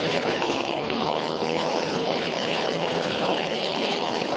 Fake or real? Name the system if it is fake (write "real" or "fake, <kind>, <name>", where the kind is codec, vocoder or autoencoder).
fake, codec, HILCodec